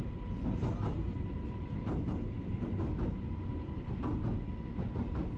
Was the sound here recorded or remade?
recorded